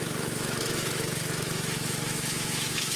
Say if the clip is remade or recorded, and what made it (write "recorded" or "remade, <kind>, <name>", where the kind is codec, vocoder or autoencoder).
remade, autoencoder, DAC-VAE